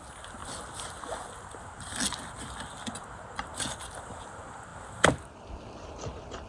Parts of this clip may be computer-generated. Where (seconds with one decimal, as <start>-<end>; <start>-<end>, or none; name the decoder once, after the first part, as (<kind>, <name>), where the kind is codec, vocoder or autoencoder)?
none